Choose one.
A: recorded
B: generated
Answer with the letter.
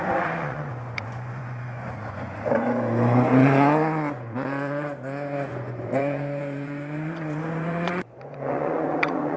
B